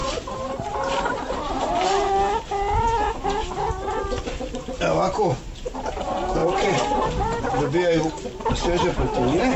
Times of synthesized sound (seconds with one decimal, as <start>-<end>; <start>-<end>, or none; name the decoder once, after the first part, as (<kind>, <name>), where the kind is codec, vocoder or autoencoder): 0.0-1.7 (vocoder, BigVGAN v2); 6.4-7.4